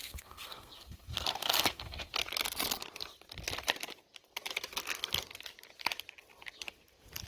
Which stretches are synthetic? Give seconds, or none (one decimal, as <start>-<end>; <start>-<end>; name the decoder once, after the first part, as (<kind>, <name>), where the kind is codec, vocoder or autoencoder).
0.0-2.1 (codec, SNAC)

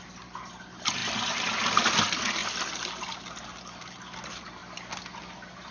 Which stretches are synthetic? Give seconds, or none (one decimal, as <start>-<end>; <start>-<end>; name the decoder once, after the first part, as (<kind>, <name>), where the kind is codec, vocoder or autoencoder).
none

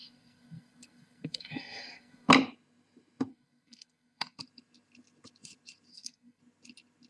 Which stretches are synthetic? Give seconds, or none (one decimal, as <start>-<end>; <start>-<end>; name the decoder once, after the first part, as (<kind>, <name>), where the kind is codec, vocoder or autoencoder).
0.0-2.3 (codec, SNAC); 3.3-4.4; 5.9-6.4

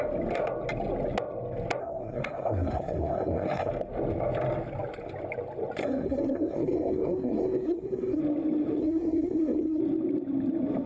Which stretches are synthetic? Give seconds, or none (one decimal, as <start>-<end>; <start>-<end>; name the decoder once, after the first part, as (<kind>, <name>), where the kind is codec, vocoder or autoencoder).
1.8-3.7 (codec, SNAC); 5.8-8.2; 8.8-9.8

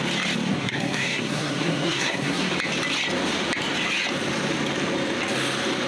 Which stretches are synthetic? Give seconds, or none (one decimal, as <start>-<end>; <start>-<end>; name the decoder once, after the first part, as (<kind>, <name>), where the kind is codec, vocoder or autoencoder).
0.5-2.5 (codec, SNAC)

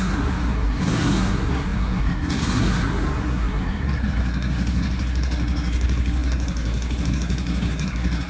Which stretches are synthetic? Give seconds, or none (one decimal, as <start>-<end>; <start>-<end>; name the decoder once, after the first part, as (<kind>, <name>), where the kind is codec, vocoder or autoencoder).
0.0-8.3 (codec, SNAC)